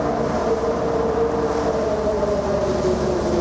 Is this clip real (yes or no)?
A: yes